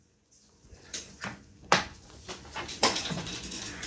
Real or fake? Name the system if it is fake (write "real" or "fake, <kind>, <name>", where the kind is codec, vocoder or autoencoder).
fake, vocoder, Vocos